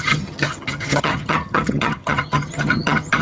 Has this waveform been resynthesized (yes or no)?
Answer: yes